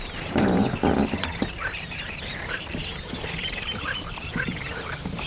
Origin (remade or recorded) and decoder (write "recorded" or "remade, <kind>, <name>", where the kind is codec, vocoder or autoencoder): remade, vocoder, BigVGAN v2